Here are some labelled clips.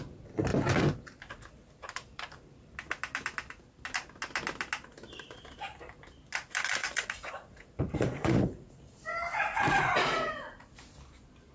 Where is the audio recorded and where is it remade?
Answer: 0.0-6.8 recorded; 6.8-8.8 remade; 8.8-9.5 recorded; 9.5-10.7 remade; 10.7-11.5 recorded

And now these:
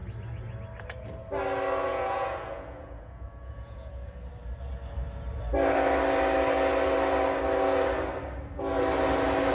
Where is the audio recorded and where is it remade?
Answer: 0.0-1.8 recorded; 1.8-4.1 remade; 4.1-9.5 recorded